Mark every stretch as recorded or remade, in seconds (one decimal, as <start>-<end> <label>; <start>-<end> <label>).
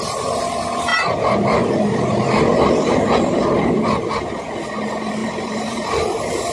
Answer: 0.0-0.9 recorded; 0.9-3.8 remade; 3.8-5.2 recorded; 5.2-6.5 remade